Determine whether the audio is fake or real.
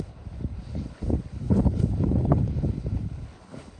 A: fake